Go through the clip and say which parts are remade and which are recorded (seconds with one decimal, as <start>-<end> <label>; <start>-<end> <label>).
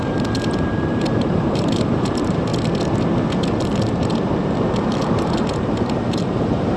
0.0-2.5 remade; 2.5-3.9 recorded; 3.9-6.8 remade